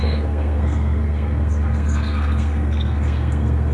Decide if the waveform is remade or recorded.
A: remade